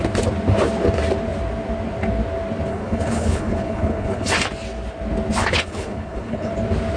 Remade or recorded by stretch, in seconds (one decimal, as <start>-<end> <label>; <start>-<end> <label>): 0.0-2.7 recorded; 2.7-4.3 remade; 4.3-5.4 recorded; 5.4-6.5 remade; 6.5-7.0 recorded